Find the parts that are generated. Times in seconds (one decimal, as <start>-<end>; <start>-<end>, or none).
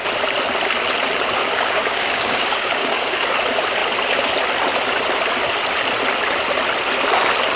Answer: 1.4-3.3